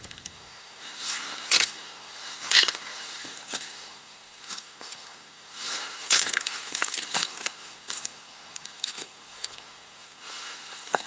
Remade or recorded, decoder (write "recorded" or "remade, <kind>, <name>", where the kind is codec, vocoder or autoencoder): remade, codec, SNAC